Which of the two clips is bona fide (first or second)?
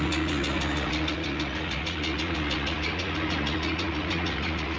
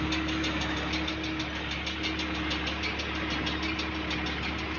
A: second